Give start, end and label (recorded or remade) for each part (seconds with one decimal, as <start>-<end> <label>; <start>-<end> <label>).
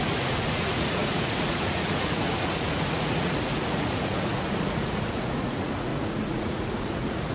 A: 0.0-7.3 remade